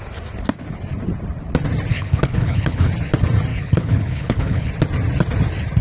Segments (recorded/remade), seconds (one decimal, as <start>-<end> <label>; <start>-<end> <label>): 0.0-1.9 recorded; 1.9-2.9 remade; 2.9-3.5 recorded; 3.5-4.7 remade; 4.7-5.8 recorded